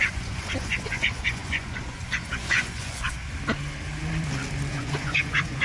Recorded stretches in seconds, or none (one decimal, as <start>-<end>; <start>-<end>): 3.2-4.7